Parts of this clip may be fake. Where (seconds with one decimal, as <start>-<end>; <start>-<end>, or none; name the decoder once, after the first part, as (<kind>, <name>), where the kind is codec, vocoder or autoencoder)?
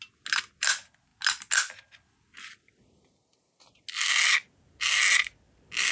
none